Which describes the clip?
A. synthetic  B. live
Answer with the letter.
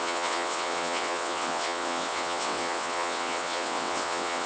A